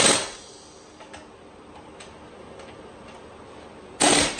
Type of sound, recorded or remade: recorded